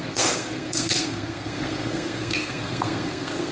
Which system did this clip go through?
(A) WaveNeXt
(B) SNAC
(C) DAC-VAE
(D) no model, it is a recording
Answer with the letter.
B